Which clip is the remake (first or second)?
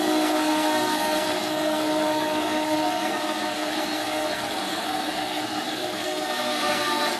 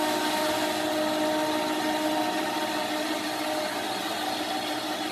first